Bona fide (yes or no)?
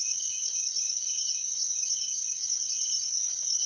no